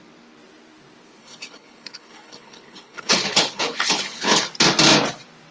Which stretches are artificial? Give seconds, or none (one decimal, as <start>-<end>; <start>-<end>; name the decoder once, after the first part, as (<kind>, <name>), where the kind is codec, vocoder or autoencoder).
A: 1.2-4.5 (codec, HILCodec)